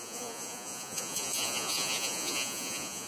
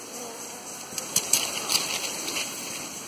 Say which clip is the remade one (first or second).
first